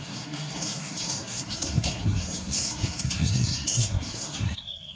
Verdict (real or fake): fake